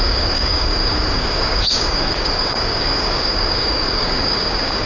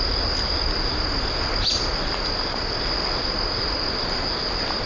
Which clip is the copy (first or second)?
first